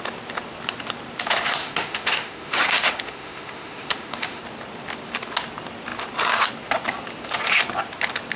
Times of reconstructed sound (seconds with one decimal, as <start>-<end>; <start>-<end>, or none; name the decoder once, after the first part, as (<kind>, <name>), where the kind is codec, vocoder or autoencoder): 1.6-4.4 (autoencoder, DAC-VAE)